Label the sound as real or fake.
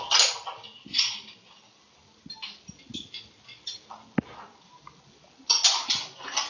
real